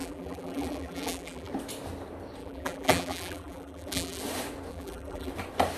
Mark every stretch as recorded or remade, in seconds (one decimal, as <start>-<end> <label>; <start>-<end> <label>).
0.0-1.5 remade; 1.5-2.4 recorded; 2.4-4.2 remade; 4.2-4.7 recorded; 4.7-5.3 remade; 5.3-5.8 recorded